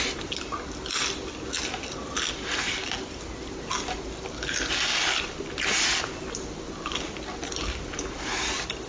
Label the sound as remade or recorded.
recorded